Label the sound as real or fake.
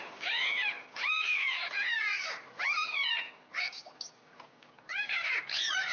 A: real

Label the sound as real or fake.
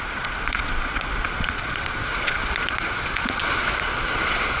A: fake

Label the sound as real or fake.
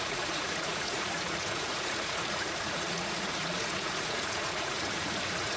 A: fake